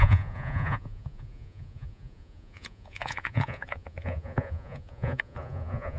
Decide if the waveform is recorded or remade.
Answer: remade